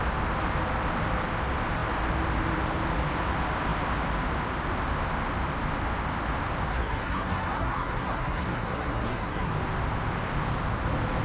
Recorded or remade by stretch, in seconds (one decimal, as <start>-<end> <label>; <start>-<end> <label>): 0.0-6.7 recorded; 6.7-9.5 remade; 9.5-11.2 recorded